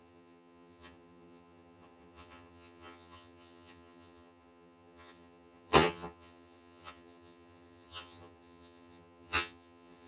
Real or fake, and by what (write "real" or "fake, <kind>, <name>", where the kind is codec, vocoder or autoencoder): fake, vocoder, HiFi-GAN